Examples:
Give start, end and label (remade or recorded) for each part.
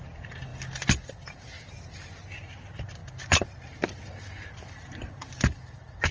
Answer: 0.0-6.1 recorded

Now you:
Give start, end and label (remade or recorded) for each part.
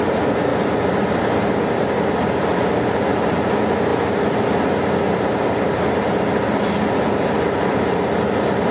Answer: 0.0-8.7 recorded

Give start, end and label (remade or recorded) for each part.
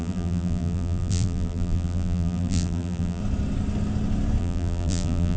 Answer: 0.0-3.2 remade; 3.2-4.4 recorded; 4.4-5.4 remade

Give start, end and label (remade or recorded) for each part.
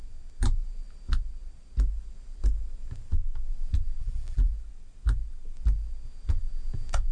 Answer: 0.0-4.0 recorded; 4.0-4.5 remade; 4.5-7.1 recorded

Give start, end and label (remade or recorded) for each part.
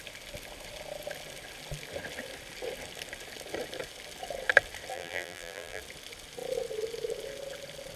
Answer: 0.0-4.9 recorded; 4.9-5.8 remade; 5.8-8.0 recorded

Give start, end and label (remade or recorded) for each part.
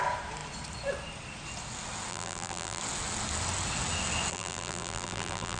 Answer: 0.0-2.1 recorded; 2.1-2.8 remade; 2.8-4.3 recorded; 4.3-5.6 remade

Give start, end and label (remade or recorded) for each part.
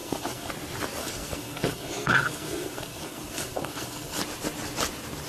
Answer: 0.0-0.5 remade; 0.5-1.0 recorded; 1.0-4.2 remade; 4.2-5.3 recorded